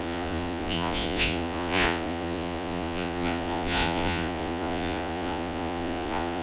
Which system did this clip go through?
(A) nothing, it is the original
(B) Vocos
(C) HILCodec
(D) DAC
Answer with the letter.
B